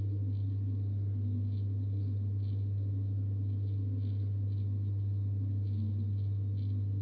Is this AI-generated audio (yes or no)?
no